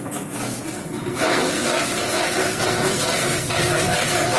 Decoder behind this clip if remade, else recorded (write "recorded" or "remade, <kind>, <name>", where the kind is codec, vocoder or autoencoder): remade, codec, SNAC